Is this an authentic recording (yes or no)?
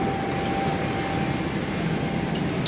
yes